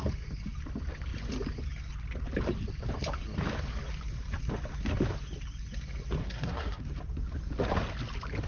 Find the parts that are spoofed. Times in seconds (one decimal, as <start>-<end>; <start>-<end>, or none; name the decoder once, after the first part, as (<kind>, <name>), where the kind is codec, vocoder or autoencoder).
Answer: 6.2-6.8 (codec, SNAC)